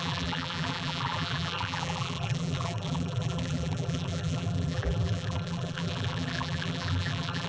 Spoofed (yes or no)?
yes